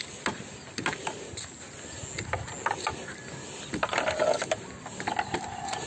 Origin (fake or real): real